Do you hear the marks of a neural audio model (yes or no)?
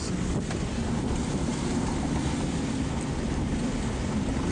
no